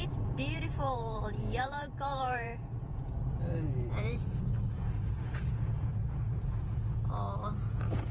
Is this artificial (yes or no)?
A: yes